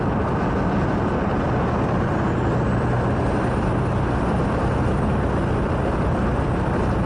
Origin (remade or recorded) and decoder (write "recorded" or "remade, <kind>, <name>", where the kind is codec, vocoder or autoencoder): recorded